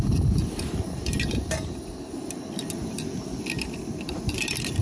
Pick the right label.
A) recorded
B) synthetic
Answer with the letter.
A